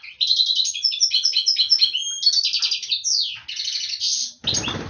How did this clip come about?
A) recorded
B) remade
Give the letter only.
A